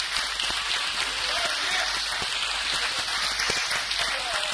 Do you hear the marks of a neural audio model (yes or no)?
no